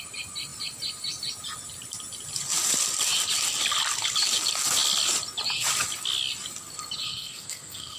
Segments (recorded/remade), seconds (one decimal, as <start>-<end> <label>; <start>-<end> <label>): 0.0-7.1 recorded; 7.1-8.0 remade